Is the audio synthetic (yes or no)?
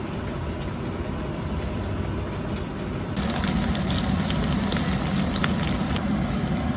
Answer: yes